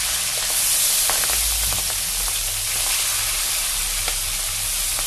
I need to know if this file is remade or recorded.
recorded